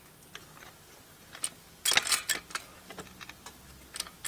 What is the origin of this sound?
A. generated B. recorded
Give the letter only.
B